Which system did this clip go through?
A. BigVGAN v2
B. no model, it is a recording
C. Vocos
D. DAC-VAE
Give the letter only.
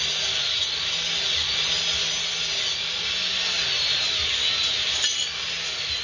B